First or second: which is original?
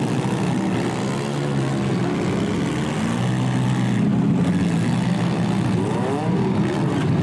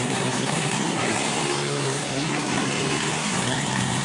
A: first